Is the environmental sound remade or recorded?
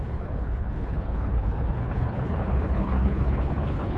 remade